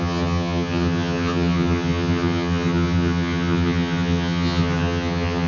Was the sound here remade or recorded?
remade